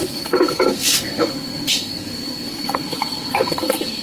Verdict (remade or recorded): remade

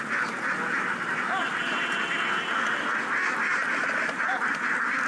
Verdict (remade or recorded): recorded